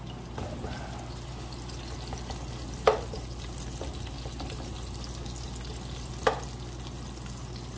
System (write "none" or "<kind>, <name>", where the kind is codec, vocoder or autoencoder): none